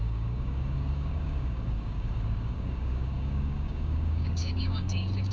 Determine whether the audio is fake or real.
fake